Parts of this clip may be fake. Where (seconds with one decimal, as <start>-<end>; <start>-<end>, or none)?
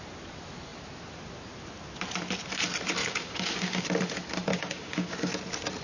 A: 3.0-3.8; 4.5-5.3